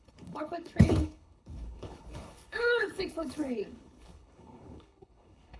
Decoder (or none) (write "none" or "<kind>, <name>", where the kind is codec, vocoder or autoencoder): codec, HILCodec